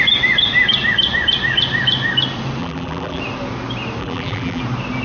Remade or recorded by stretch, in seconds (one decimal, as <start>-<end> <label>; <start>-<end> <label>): 0.0-2.6 recorded; 2.6-3.2 remade; 3.2-4.0 recorded; 4.0-4.6 remade; 4.6-5.0 recorded